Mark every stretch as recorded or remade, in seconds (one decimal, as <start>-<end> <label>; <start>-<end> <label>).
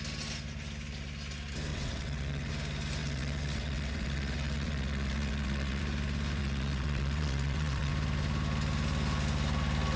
0.0-1.7 recorded; 1.7-2.5 remade; 2.5-3.0 recorded; 3.0-5.8 remade; 5.8-6.4 recorded; 6.4-7.9 remade; 7.9-10.0 recorded